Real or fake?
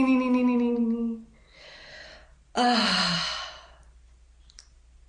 real